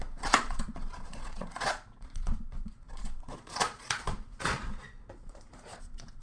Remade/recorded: remade